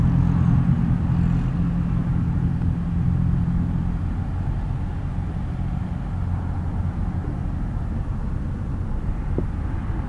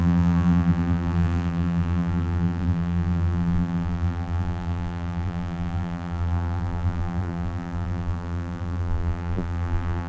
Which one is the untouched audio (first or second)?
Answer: first